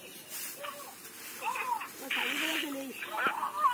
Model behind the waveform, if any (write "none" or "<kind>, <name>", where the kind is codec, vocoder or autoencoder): none